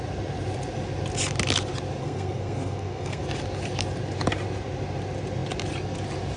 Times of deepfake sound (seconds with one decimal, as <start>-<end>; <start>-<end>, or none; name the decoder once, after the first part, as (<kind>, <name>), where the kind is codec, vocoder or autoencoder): 2.0-3.2 (codec, SNAC)